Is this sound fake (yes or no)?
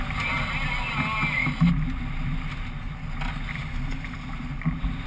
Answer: no